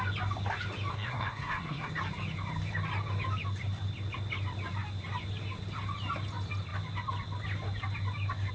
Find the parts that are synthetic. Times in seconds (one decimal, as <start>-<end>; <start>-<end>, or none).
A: 0.9-1.9